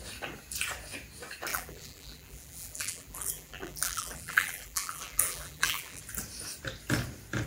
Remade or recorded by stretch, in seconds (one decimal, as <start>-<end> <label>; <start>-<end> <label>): 0.0-1.5 recorded; 1.5-6.0 remade; 6.0-7.5 recorded